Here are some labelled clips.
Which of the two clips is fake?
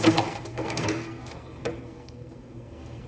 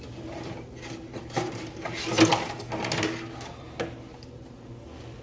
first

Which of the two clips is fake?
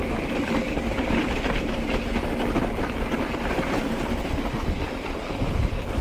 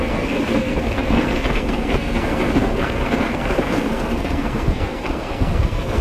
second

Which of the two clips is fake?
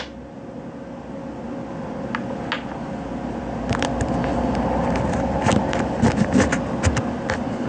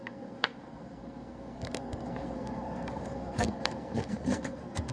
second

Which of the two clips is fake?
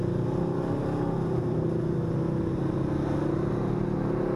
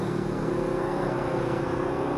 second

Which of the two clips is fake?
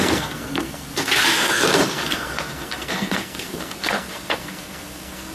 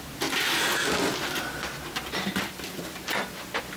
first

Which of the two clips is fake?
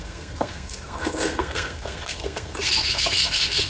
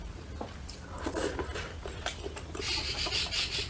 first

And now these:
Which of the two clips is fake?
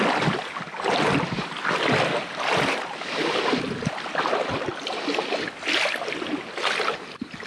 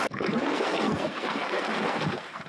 second